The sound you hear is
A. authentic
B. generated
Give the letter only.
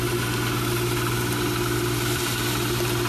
A